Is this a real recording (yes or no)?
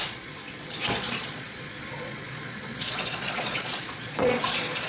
no